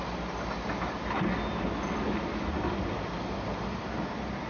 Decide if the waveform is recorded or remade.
recorded